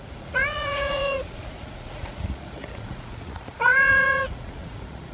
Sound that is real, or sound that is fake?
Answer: fake